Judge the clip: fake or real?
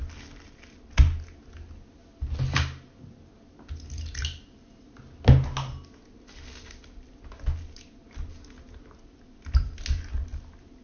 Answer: real